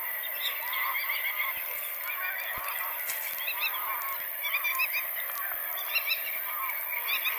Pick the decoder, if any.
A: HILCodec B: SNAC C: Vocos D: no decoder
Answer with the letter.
D